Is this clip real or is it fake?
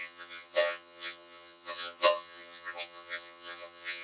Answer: fake